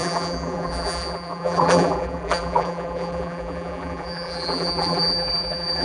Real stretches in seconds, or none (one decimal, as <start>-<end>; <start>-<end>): none